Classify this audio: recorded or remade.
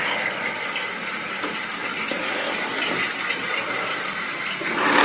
recorded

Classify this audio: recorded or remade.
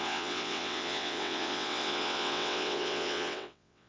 remade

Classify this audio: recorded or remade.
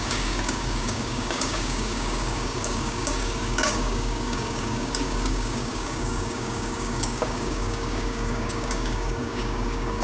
remade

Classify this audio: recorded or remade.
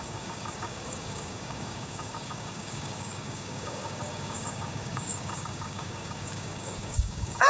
remade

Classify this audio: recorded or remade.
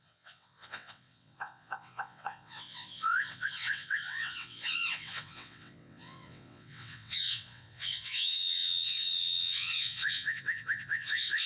remade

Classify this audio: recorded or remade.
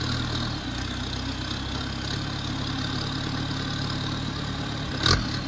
recorded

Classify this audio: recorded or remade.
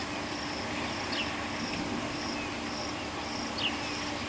recorded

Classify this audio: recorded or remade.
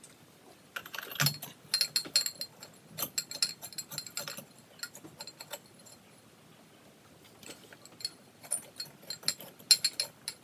recorded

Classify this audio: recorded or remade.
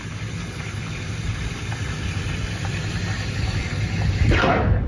recorded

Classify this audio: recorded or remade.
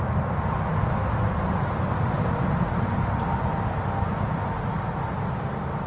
recorded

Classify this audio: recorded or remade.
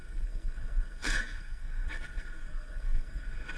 remade